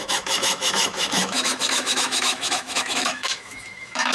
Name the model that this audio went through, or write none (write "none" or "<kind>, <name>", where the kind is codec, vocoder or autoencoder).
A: autoencoder, DAC-VAE